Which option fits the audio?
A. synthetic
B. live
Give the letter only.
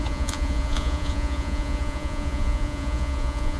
A